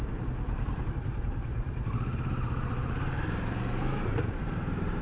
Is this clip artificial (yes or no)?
yes